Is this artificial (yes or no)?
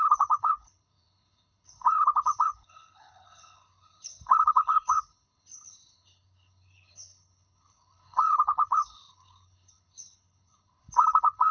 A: yes